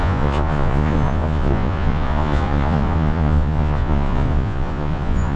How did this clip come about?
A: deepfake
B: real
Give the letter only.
A